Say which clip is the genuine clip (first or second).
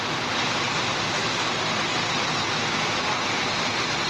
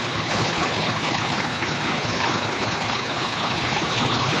first